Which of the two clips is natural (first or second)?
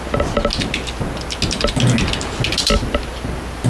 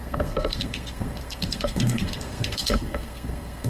first